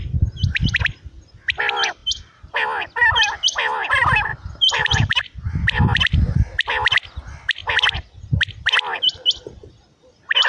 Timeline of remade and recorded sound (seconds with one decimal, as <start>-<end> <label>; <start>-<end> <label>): 0.0-2.0 recorded; 2.0-2.5 remade; 2.5-4.3 recorded; 4.3-5.2 remade; 5.2-10.5 recorded